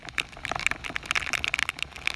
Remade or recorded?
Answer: recorded